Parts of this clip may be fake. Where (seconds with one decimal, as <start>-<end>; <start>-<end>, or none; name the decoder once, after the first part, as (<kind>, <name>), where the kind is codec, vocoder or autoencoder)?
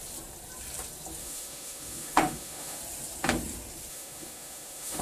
1.2-2.8 (autoencoder, DAC-VAE); 3.9-5.0